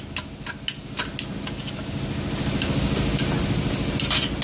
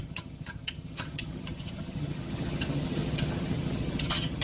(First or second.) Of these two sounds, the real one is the first